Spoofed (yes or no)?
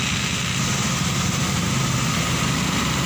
no